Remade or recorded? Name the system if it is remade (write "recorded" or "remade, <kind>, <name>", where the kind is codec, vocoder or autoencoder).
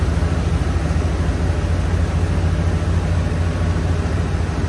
recorded